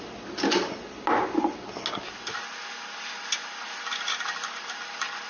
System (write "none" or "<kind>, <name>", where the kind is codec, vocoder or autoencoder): none